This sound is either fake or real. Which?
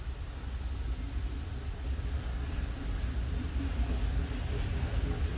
real